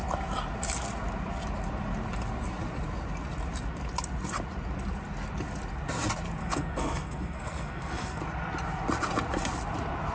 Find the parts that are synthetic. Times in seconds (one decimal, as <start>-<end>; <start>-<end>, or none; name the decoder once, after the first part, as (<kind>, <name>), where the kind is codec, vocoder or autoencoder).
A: 6.4-8.2 (codec, SNAC)